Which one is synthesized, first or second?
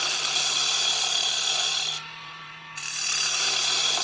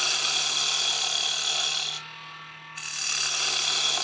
first